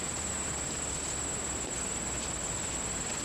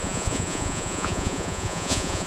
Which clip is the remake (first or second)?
second